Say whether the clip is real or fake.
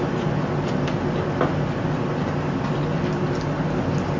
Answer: real